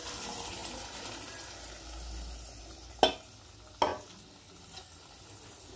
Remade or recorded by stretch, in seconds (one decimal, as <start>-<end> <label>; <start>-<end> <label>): 0.0-5.8 recorded